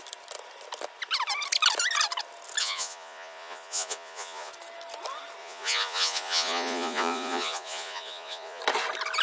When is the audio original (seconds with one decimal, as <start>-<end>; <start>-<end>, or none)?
0.0-2.6; 4.5-5.4; 8.6-9.2